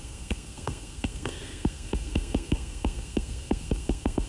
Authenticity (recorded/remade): remade